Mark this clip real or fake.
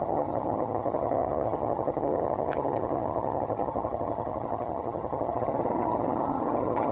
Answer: fake